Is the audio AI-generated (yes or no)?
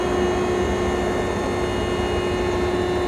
no